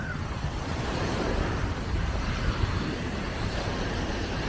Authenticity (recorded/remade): remade